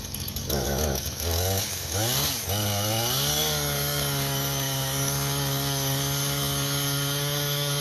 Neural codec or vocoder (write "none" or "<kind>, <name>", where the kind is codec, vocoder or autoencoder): codec, DAC